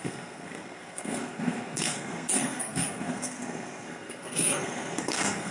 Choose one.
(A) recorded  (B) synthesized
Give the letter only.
B